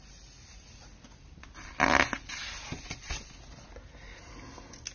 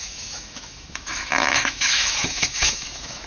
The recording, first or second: first